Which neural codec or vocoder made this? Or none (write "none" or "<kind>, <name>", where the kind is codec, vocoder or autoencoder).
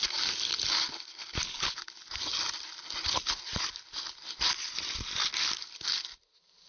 none